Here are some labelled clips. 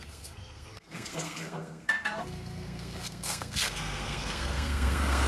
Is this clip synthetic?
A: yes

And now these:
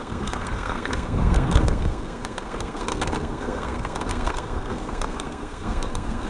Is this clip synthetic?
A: yes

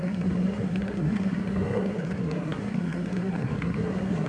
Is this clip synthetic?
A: yes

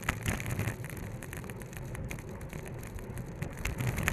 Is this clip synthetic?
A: no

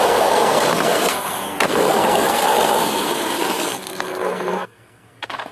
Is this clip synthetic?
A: yes